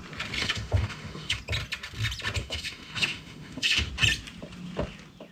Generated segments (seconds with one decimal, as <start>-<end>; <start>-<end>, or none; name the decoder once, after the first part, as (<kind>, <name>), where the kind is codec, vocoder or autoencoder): 0.4-1.4 (autoencoder, DAC-VAE); 2.4-3.9